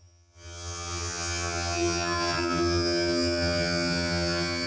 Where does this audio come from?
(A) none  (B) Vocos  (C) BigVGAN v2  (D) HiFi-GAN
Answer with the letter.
D